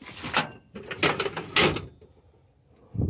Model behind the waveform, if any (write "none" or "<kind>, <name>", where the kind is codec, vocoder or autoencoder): none